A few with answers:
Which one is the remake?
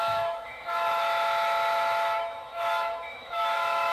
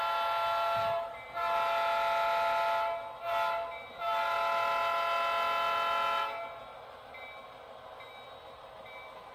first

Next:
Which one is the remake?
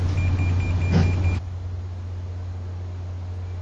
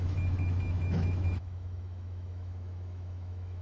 second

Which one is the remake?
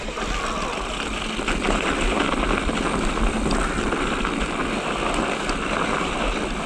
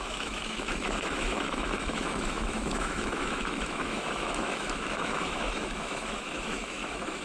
second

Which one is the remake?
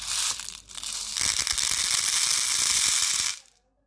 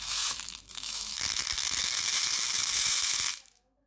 second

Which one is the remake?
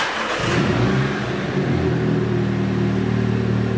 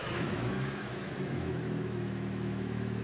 second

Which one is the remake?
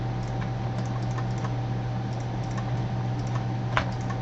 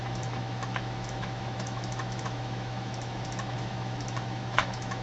second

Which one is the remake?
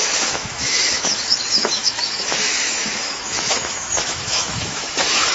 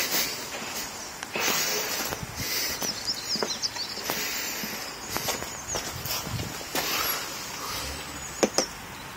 first